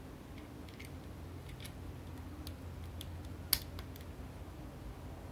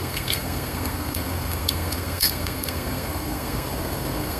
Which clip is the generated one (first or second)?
second